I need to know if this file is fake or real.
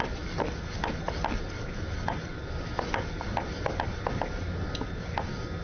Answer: real